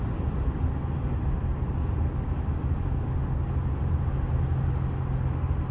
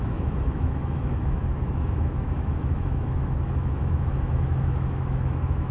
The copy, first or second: second